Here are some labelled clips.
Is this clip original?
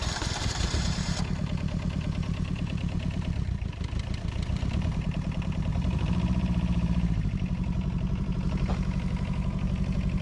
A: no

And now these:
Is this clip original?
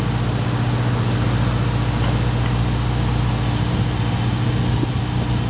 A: yes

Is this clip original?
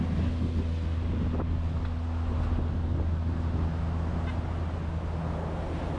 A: yes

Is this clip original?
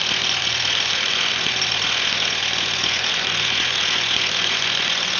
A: no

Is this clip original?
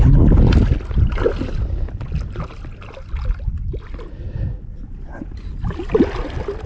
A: yes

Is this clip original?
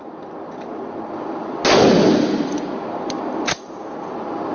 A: yes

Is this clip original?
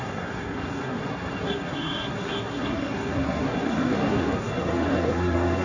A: no